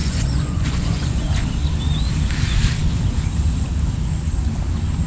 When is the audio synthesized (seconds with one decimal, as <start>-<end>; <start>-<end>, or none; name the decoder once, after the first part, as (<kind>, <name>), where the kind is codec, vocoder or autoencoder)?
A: 0.0-1.2 (vocoder, Vocos)